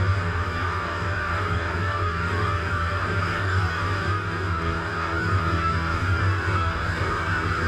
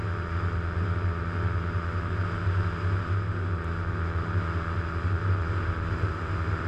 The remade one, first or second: first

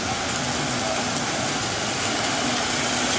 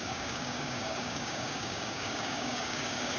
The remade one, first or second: second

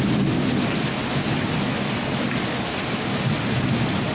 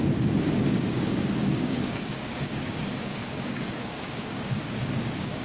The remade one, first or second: second